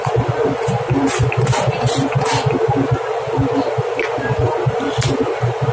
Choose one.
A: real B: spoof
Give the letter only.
A